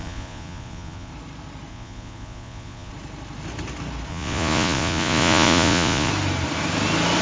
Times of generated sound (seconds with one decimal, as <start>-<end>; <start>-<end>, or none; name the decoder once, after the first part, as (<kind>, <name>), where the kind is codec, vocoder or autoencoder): 0.0-1.1 (vocoder, Vocos); 1.7-2.9; 4.1-6.1